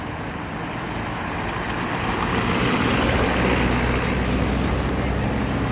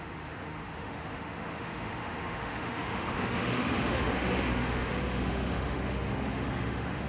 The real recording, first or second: first